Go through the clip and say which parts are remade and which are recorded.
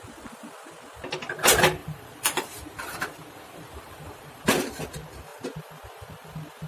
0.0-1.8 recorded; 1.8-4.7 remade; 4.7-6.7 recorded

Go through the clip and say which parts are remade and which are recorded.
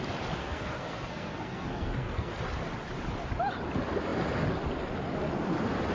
0.0-0.4 recorded; 0.4-2.3 remade; 2.3-5.9 recorded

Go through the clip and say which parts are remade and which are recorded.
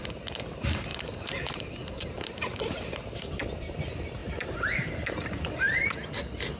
0.0-0.9 recorded; 0.9-3.8 remade; 3.8-4.2 recorded; 4.2-5.9 remade; 5.9-6.6 recorded